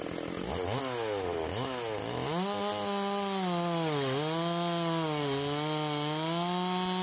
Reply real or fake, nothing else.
real